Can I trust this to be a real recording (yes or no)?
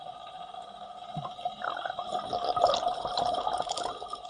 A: yes